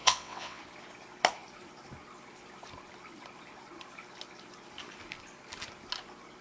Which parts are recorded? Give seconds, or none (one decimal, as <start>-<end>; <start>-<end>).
0.6-6.4